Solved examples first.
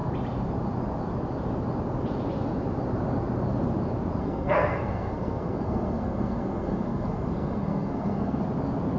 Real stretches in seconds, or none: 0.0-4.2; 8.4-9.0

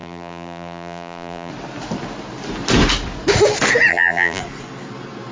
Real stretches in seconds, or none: 1.5-3.9; 4.4-5.3

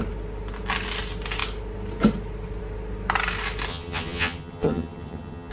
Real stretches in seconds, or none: 0.0-3.7

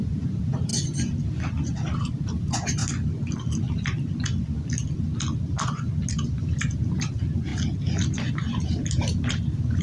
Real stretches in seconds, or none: 0.7-2.0; 2.8-6.1; 7.5-8.3

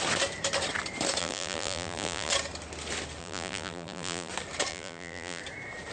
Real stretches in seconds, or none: 0.0-1.2; 2.3-3.2; 4.3-4.7; 5.4-5.9